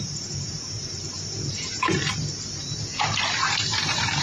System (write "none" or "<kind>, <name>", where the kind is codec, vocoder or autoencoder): vocoder, BigVGAN v2